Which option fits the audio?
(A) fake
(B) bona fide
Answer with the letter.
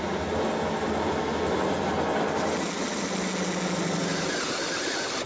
B